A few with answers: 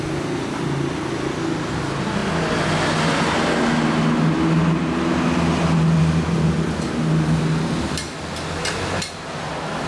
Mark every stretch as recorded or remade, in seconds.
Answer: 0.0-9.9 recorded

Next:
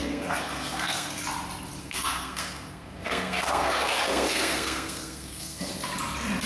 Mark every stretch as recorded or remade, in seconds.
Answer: 0.0-1.2 remade; 1.2-1.8 recorded; 1.8-5.7 remade; 5.7-6.5 recorded

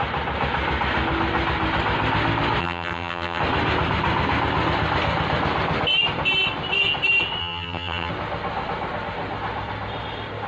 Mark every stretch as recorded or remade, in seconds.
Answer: 0.0-2.6 recorded; 2.6-3.4 remade; 3.4-7.4 recorded; 7.4-8.1 remade; 8.1-10.5 recorded

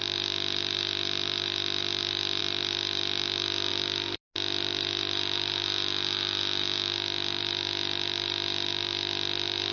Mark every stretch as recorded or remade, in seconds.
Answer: 0.0-9.7 recorded